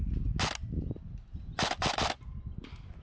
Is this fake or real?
real